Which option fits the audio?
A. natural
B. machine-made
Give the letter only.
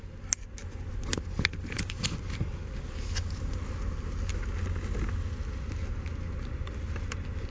A